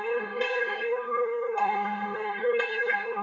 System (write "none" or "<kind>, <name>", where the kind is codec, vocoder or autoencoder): codec, SNAC